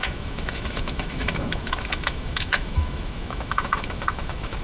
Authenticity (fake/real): fake